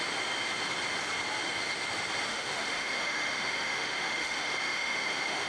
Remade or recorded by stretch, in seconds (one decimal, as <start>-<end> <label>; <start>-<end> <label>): 0.0-2.3 recorded; 2.3-5.5 remade